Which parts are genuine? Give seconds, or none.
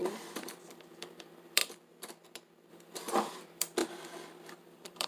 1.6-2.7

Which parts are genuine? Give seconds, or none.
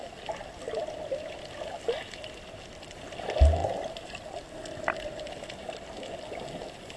0.0-7.0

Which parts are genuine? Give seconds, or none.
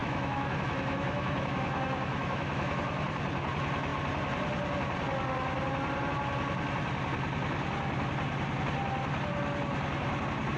2.8-10.6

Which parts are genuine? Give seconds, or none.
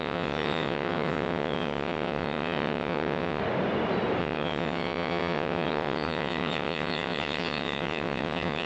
3.4-4.2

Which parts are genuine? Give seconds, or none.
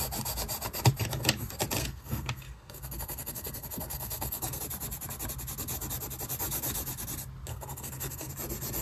0.0-1.8; 4.6-7.5; 8.3-8.8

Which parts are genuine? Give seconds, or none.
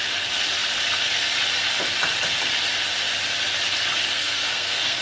0.0-4.1